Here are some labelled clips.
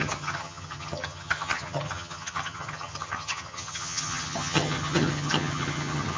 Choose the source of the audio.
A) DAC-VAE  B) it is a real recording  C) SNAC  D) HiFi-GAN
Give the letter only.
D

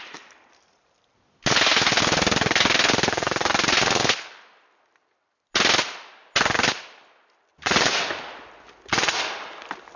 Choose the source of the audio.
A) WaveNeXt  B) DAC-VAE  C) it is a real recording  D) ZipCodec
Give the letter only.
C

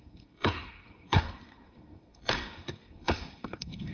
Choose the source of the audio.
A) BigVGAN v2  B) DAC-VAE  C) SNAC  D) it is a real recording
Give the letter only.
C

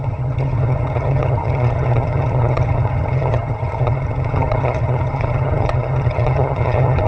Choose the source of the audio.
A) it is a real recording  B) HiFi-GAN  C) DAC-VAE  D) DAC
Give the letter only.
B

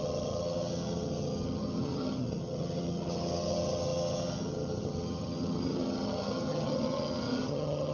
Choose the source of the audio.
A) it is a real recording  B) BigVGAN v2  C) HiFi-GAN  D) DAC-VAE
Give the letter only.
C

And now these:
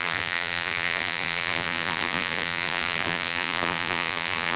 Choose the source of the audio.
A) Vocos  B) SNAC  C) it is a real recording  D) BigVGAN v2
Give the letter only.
D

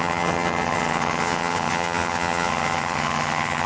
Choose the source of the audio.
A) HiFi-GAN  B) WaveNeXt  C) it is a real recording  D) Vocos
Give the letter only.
A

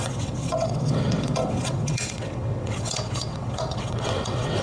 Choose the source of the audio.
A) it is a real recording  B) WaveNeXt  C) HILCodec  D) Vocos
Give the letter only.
B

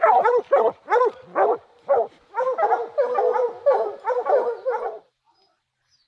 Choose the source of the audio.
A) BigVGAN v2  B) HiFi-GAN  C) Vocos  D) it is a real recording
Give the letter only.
D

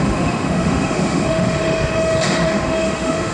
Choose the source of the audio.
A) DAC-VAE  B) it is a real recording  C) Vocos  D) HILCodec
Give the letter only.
A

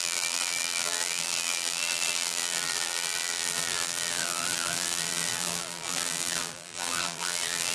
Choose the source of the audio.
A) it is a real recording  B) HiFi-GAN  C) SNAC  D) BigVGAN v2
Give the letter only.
D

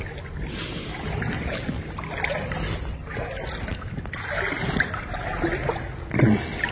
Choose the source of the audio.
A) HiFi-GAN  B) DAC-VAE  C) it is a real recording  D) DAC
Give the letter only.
C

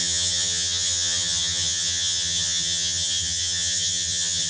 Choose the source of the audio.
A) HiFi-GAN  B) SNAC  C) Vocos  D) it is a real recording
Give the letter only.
A